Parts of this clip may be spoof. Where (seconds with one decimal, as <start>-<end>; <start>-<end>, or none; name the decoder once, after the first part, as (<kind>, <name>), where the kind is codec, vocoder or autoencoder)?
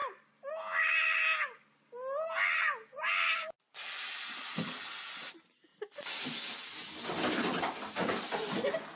none